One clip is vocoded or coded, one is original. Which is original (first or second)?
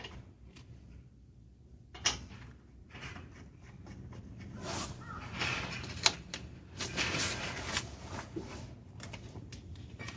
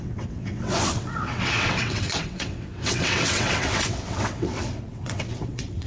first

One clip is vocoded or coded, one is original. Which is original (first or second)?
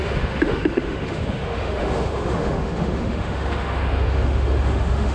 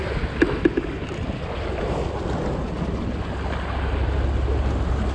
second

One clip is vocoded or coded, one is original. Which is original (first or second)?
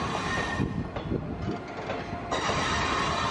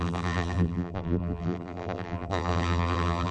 first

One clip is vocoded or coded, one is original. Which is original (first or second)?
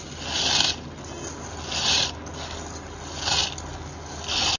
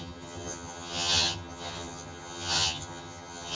first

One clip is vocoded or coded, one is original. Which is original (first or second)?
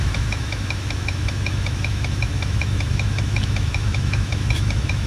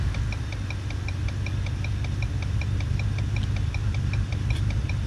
second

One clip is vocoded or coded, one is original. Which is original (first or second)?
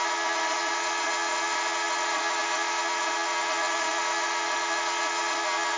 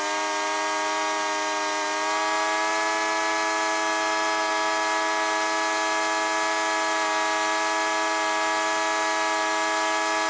second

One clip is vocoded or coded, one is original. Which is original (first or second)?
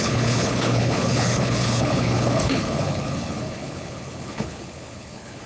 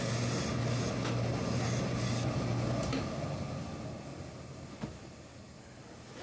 second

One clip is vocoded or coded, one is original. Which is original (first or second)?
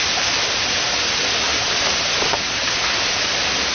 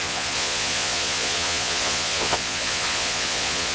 first